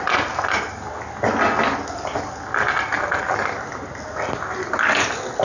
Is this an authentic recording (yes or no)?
yes